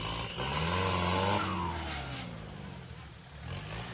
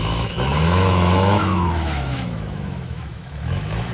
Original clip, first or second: first